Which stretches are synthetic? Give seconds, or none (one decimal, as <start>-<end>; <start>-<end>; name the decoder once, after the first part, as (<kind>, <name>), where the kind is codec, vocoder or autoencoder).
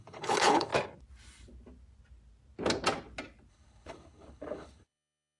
0.0-0.7 (codec, HILCodec); 3.5-5.4